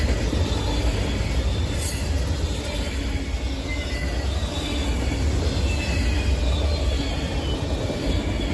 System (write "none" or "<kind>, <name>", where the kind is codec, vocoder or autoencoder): none